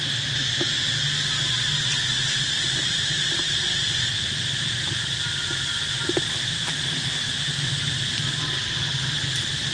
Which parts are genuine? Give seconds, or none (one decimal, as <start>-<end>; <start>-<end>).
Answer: 0.0-5.7; 6.9-9.7